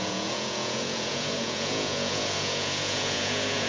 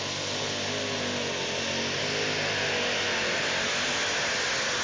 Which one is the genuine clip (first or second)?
second